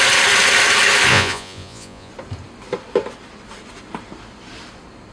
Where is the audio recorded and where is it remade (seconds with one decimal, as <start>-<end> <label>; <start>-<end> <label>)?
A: 0.0-1.1 recorded; 1.1-2.1 remade; 2.1-5.1 recorded